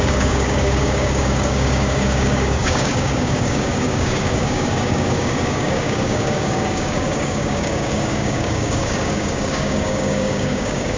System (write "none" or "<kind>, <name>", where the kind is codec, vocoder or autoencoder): codec, DAC